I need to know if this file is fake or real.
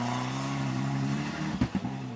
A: real